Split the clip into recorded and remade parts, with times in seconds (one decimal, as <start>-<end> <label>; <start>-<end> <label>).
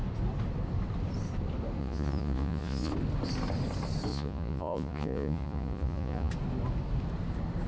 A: 0.0-1.8 recorded; 1.8-2.9 remade; 2.9-4.1 recorded; 4.1-6.3 remade; 6.3-7.7 recorded